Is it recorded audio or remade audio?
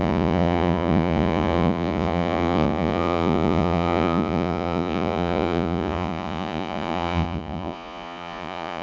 remade